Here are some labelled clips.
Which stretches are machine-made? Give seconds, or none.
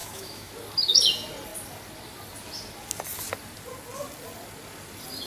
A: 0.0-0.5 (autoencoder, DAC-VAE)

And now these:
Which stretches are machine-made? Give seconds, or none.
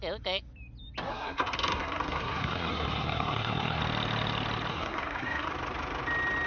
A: 1.1-3.8 (codec, SNAC); 4.7-5.5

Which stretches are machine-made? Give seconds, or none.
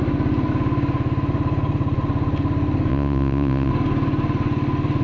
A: 2.9-3.7 (vocoder, Vocos)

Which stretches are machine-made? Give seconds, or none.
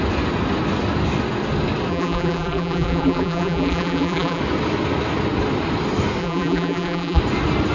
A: 1.9-4.4 (vocoder, BigVGAN v2); 6.2-7.2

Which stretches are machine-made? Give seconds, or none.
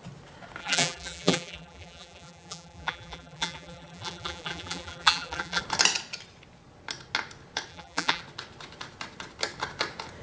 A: 0.6-5.6 (vocoder, BigVGAN v2); 7.7-8.2